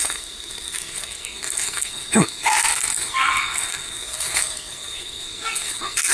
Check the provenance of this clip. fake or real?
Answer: fake